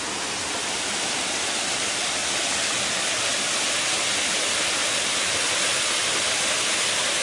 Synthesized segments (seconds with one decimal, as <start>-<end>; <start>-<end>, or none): 2.2-3.1; 4.8-6.2